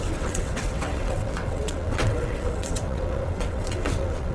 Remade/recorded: remade